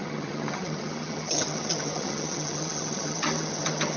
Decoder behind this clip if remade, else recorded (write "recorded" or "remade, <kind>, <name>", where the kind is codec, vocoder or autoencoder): remade, vocoder, HiFi-GAN